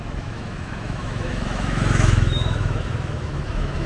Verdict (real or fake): fake